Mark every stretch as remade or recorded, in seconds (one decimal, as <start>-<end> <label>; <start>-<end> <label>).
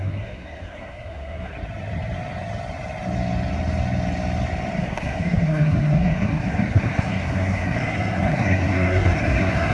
0.0-1.5 remade; 1.5-4.8 recorded; 4.8-9.7 remade